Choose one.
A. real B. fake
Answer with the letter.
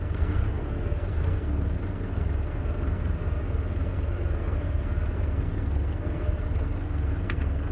B